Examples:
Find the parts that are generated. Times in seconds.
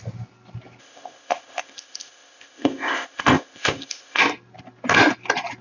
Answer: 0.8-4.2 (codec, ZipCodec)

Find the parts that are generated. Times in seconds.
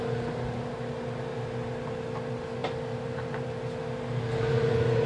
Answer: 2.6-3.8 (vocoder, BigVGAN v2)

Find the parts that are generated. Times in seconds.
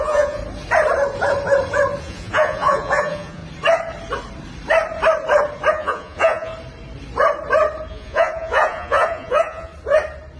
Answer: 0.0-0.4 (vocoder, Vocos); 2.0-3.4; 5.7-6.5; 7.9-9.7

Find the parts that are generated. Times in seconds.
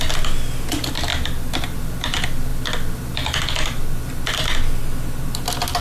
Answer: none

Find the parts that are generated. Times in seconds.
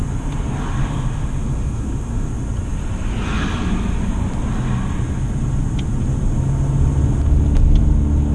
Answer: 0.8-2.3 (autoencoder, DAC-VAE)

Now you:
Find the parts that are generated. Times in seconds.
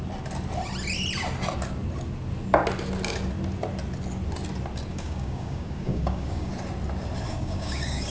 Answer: 4.9-6.5 (codec, DAC); 7.3-8.1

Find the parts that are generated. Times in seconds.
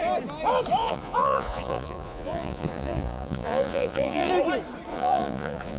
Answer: 0.8-4.3 (vocoder, Vocos); 4.9-5.8